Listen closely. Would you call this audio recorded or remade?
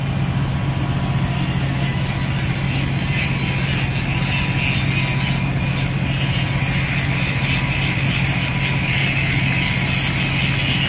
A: recorded